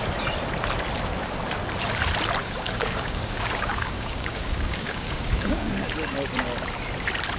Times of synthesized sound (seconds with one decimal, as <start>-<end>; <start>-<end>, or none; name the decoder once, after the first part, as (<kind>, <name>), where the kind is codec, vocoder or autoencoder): 2.4-5.7 (codec, DAC)